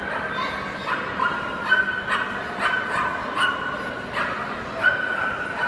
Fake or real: real